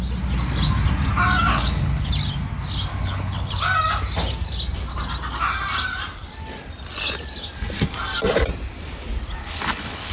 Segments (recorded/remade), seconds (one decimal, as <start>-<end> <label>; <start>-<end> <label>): 0.0-1.5 recorded; 1.5-2.1 remade; 2.1-2.9 recorded; 2.9-3.5 remade; 3.5-9.4 recorded; 9.4-10.1 remade